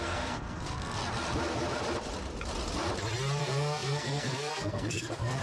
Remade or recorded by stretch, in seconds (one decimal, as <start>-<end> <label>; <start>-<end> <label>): 0.0-1.0 remade; 1.0-3.4 recorded; 3.4-5.4 remade